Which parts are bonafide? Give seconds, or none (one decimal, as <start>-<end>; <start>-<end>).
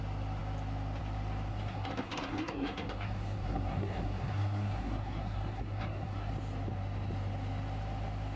0.0-1.5; 6.3-8.4